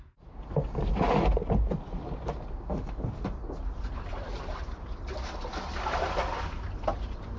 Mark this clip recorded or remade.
recorded